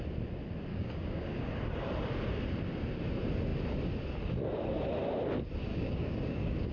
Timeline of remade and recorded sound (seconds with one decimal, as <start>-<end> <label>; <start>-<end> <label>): 0.0-0.7 recorded; 0.7-1.5 remade; 1.5-5.7 recorded; 5.7-6.7 remade